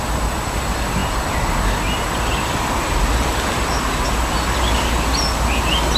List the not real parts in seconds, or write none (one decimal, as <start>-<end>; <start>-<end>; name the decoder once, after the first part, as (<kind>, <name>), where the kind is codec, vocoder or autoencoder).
none